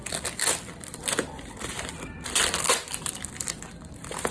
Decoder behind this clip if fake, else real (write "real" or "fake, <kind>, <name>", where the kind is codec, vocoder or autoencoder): real